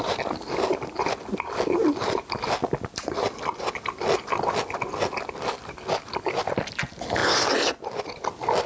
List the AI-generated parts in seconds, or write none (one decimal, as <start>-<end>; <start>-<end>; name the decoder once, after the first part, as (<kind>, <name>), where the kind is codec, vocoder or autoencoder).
none